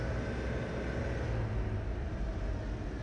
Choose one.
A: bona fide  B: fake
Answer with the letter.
A